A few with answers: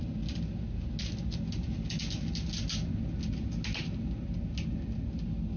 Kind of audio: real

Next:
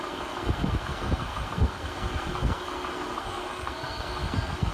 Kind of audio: fake